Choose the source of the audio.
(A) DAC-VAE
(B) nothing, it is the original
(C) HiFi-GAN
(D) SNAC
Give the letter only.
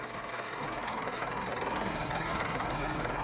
D